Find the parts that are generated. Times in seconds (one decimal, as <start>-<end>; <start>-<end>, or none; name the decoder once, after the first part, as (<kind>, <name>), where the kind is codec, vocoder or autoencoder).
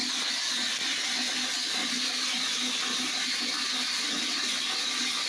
none